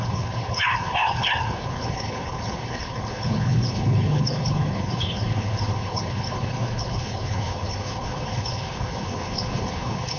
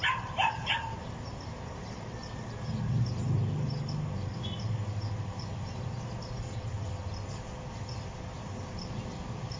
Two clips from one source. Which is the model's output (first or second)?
first